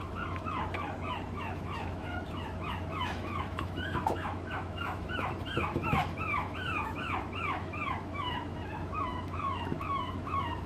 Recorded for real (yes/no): no